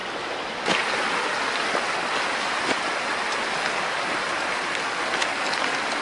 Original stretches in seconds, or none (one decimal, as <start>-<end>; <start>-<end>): 0.0-6.0